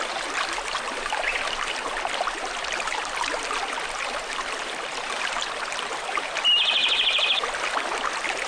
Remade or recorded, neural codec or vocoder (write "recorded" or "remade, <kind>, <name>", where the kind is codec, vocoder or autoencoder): recorded